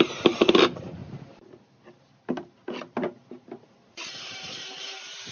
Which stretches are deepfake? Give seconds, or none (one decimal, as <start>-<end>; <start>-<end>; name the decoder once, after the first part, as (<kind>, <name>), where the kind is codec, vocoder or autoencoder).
0.0-1.0 (vocoder, BigVGAN v2); 4.2-5.3